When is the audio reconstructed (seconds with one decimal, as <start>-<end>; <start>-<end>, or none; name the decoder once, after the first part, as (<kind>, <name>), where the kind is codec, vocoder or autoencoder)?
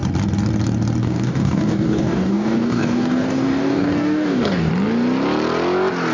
1.0-4.7 (codec, DAC)